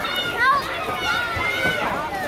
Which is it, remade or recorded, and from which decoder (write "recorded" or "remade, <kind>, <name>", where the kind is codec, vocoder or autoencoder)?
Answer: recorded